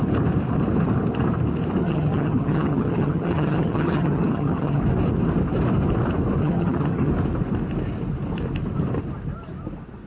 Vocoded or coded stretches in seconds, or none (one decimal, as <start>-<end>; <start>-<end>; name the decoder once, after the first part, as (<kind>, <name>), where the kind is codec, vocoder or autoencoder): 1.8-4.8 (vocoder, HiFi-GAN); 6.4-7.1